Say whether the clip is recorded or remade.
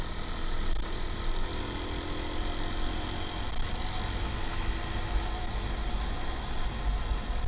recorded